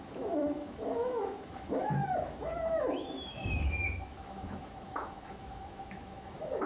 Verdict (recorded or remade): remade